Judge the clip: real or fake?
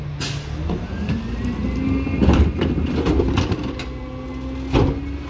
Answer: real